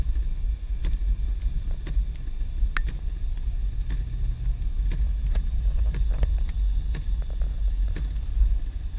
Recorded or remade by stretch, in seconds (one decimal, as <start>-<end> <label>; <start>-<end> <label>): 0.0-5.2 recorded; 5.2-6.3 remade; 6.3-9.0 recorded